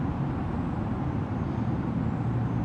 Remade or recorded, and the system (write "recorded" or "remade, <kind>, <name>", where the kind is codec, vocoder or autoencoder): remade, vocoder, BigVGAN v2